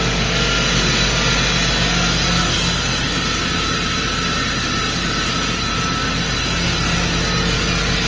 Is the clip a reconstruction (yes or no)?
no